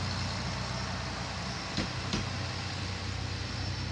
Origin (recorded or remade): recorded